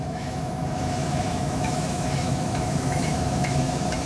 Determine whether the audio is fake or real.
fake